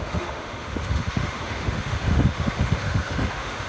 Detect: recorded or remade remade